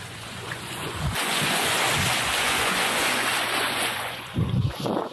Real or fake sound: fake